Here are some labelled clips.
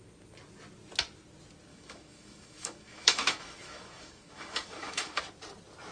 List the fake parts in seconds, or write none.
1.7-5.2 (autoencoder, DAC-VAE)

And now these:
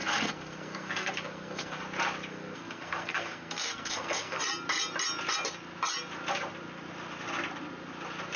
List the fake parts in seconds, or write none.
0.0-1.8 (codec, SNAC); 2.3-4.4

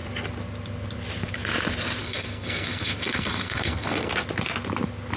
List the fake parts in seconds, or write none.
2.0-4.1 (codec, SNAC)

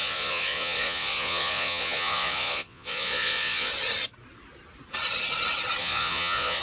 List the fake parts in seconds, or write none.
0.0-3.7 (vocoder, Vocos); 5.8-6.6

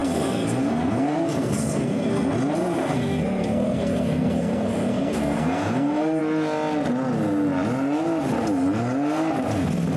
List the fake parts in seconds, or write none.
0.0-2.3 (codec, SNAC); 2.8-6.2

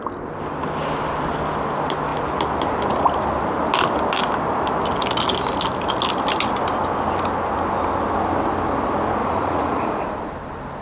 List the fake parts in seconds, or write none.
9.2-10.0 (vocoder, Vocos)

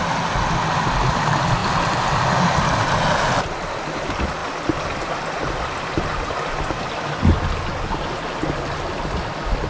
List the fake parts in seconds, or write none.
none

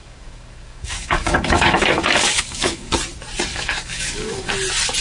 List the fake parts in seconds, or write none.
0.0-2.9 (codec, DAC); 3.5-4.5